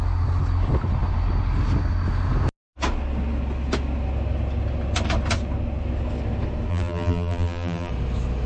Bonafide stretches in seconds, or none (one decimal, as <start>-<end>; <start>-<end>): 0.0-6.7; 7.9-8.5